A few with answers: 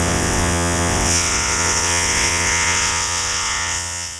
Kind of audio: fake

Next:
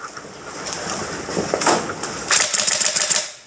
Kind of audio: real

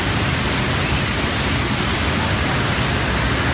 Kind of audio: real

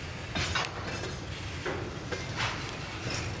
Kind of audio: real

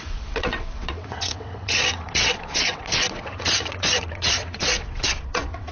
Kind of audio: fake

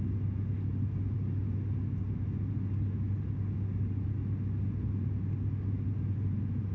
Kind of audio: real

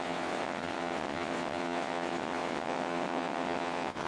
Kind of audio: fake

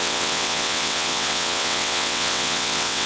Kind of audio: fake